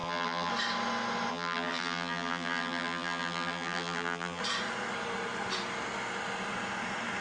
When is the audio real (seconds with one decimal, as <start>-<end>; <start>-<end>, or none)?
0.5-1.3; 4.4-7.2